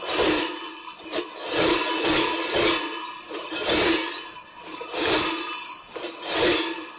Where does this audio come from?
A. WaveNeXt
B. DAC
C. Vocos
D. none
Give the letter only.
D